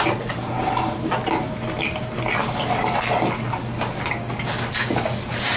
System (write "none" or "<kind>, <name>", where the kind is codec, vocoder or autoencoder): none